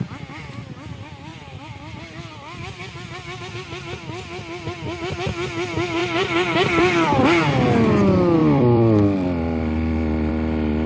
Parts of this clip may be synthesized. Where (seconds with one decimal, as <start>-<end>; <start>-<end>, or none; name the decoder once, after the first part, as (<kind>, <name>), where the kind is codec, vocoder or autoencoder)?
1.3-2.0 (vocoder, BigVGAN v2); 6.0-7.2; 8.4-10.3

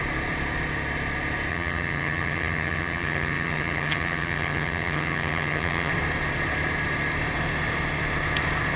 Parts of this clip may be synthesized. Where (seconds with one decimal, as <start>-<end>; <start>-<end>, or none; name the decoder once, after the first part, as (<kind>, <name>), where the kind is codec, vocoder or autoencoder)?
1.5-5.9 (vocoder, HiFi-GAN)

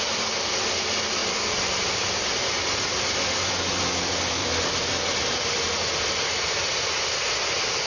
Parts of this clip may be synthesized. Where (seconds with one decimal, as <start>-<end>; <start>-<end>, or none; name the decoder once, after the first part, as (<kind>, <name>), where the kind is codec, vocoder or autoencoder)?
4.4-5.6 (vocoder, BigVGAN v2)

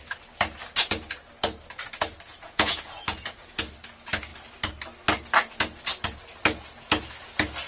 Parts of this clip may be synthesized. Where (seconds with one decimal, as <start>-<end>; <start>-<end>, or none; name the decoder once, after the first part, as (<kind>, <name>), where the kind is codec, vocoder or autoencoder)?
2.3-3.6 (vocoder, Vocos)

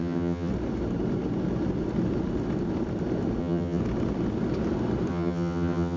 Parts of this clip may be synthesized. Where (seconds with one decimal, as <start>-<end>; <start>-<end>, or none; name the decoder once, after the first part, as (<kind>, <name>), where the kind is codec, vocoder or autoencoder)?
0.0-0.5 (vocoder, HiFi-GAN); 3.4-3.8; 5.1-6.0

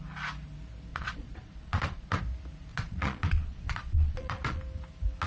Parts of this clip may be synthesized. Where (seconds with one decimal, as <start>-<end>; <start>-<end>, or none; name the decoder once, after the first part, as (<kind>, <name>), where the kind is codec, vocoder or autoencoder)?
0.9-2.2 (vocoder, Vocos); 2.7-4.6